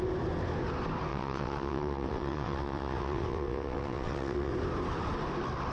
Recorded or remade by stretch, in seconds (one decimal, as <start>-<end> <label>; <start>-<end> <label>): 0.0-1.1 recorded; 1.1-4.5 remade; 4.5-5.7 recorded